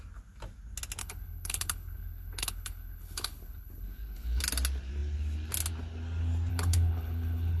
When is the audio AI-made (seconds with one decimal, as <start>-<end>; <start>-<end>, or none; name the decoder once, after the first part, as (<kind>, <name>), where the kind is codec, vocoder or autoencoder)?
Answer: 1.0-4.4 (codec, HILCodec); 6.5-7.6